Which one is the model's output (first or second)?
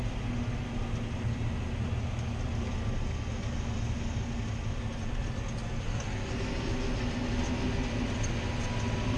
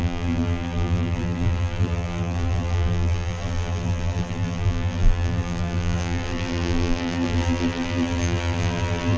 second